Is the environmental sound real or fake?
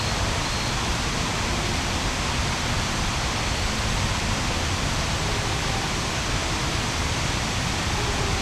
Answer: fake